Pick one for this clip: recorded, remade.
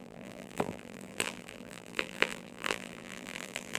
remade